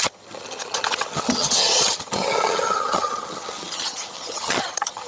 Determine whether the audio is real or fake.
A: fake